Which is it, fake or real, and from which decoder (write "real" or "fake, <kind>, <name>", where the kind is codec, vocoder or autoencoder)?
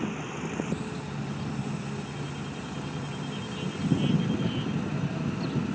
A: real